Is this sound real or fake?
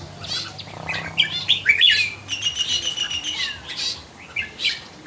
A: real